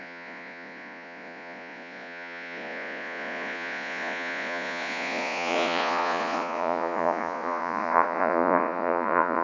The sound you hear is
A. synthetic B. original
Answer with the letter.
A